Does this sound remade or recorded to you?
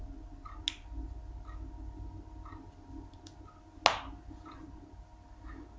recorded